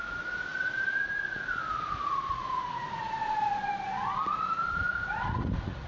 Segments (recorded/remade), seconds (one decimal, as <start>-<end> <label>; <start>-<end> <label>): 0.0-3.7 remade; 3.7-4.9 recorded; 4.9-5.9 remade